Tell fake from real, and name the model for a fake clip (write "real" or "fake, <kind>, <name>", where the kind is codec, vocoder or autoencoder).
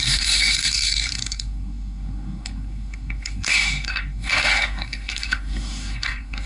fake, codec, SNAC